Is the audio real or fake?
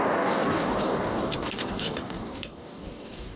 fake